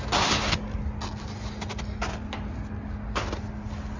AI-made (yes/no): no